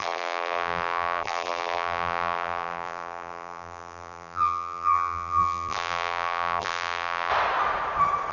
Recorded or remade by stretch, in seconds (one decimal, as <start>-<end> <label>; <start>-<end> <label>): 0.0-7.3 remade; 7.3-8.3 recorded